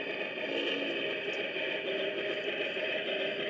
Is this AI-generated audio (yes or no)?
no